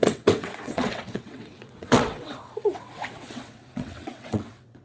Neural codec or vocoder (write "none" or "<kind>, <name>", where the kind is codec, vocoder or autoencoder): vocoder, WaveNeXt